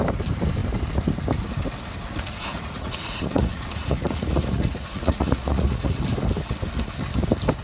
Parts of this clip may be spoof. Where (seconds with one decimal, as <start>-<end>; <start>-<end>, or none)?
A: 2.1-6.0